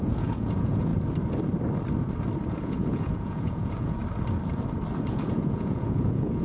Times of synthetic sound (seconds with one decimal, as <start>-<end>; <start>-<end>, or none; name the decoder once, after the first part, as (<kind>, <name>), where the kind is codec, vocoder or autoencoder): 0.0-0.9 (vocoder, Vocos); 2.5-4.0; 5.1-6.4